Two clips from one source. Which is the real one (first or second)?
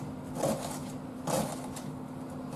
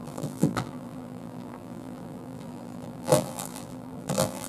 first